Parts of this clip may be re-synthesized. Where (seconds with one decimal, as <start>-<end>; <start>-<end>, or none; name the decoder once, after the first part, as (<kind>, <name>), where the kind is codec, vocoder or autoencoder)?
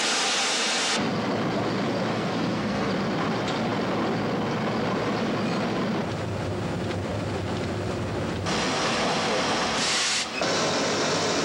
2.1-2.9 (codec, SNAC)